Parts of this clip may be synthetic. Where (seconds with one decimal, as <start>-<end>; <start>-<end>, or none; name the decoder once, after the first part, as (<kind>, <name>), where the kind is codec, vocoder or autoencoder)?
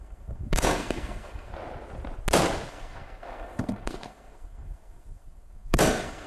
0.0-1.5 (codec, SNAC); 2.7-6.3